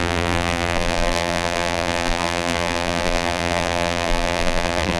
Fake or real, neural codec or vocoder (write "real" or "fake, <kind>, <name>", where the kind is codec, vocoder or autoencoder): fake, vocoder, BigVGAN v2